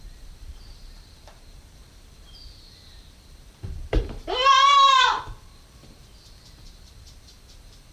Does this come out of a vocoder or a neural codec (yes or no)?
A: yes